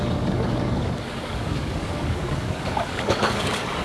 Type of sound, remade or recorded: remade